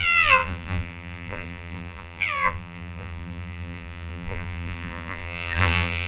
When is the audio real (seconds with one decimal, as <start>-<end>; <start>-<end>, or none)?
none